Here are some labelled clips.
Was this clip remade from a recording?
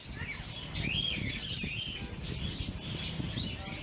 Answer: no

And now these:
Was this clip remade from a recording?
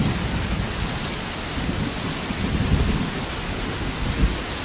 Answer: no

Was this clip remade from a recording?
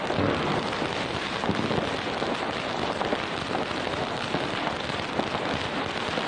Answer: no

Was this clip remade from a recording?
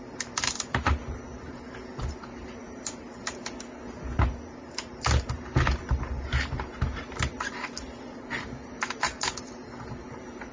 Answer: no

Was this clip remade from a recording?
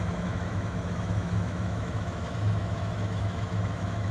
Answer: yes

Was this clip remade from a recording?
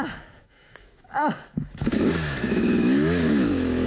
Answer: yes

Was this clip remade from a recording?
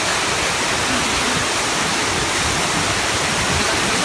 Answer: no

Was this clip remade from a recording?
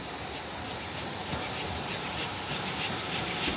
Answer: no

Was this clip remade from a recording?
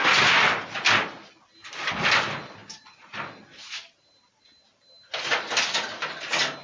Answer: no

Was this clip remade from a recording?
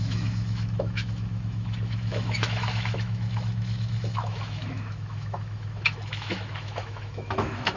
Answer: yes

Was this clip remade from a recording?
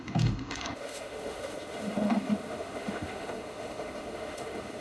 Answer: yes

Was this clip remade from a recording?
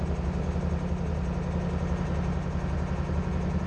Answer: no